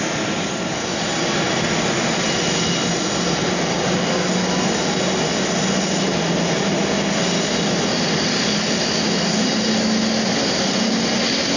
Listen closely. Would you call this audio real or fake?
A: real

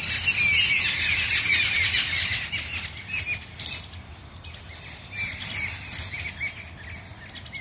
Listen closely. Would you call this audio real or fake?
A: real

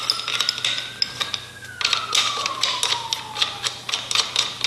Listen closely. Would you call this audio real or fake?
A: real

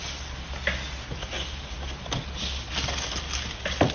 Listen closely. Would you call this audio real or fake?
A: real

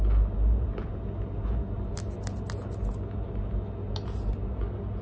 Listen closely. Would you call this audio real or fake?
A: real